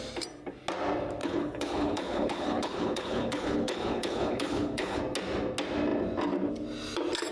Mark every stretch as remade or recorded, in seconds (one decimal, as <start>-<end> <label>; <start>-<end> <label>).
0.0-1.2 recorded; 1.2-5.0 remade; 5.0-7.3 recorded